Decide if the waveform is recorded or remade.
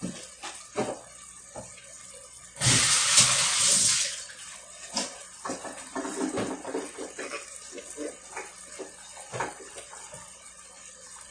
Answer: recorded